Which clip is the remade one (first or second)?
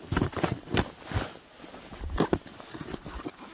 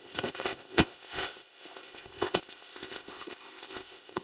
second